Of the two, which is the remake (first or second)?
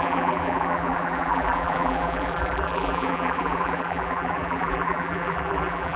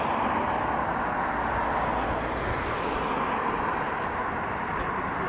first